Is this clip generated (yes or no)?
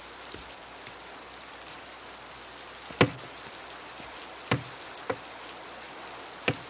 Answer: no